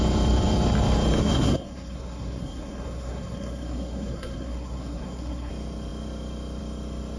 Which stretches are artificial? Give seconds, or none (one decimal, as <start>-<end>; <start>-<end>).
1.2-5.5